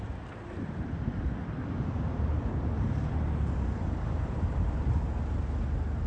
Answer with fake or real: real